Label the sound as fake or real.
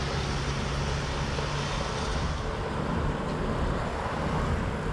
real